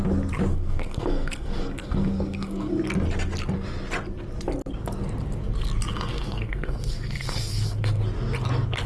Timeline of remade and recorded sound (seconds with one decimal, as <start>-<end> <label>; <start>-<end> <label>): 0.0-0.5 recorded; 0.5-2.7 remade; 2.7-5.9 recorded; 5.9-8.0 remade; 8.0-8.9 recorded